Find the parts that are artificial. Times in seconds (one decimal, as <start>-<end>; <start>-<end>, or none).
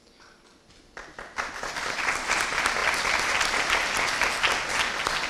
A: none